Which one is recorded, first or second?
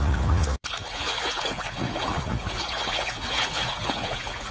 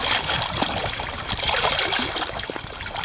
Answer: second